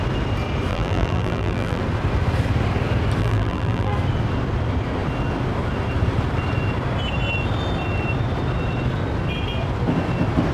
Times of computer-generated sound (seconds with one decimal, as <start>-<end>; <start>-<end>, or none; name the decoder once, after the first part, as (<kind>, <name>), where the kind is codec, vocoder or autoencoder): 0.7-1.8 (vocoder, BigVGAN v2); 3.2-3.9